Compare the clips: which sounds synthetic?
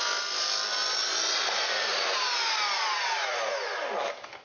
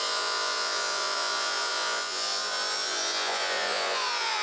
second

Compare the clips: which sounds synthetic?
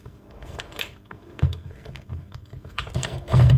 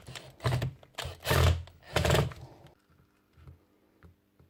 first